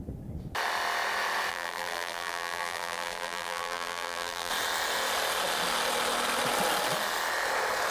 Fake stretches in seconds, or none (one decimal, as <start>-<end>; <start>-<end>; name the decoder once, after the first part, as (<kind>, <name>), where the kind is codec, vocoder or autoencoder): 1.5-4.5 (vocoder, BigVGAN v2)

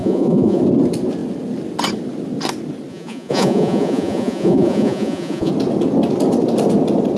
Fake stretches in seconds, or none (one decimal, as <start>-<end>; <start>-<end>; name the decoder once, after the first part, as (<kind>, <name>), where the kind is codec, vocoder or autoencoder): 0.0-0.6 (vocoder, Vocos); 2.9-5.5